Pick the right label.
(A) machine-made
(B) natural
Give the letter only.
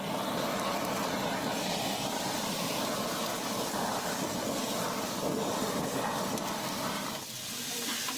A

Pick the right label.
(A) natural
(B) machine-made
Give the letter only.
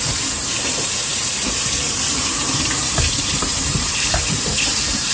B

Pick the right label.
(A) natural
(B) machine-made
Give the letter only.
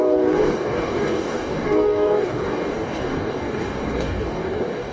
B